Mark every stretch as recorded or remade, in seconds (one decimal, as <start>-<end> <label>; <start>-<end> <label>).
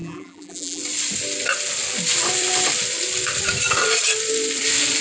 0.0-0.8 remade; 0.8-5.0 recorded